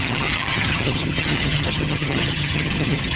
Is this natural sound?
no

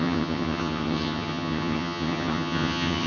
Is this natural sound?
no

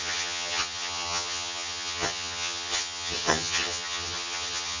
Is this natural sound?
no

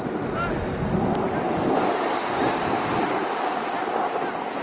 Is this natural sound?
yes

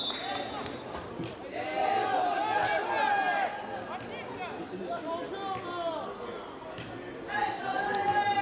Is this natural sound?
yes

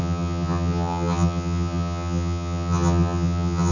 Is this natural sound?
no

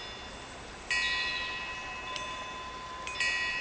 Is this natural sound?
yes